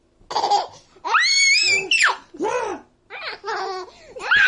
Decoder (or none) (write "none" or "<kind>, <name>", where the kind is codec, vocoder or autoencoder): none